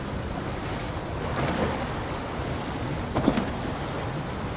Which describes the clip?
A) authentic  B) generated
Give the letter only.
A